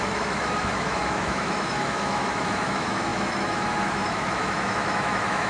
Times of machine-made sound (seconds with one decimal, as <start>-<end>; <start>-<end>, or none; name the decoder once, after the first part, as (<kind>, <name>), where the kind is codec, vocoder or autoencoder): 0.0-5.5 (autoencoder, DAC-VAE)